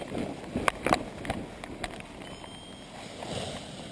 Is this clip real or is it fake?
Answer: real